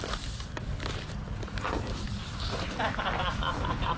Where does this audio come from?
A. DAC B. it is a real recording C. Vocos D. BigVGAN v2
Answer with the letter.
D